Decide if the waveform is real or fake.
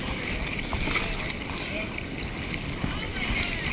fake